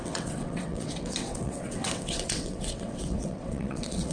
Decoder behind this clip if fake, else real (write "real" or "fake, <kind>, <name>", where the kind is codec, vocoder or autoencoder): fake, vocoder, WaveNeXt